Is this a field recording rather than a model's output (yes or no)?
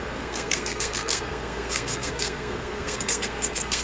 no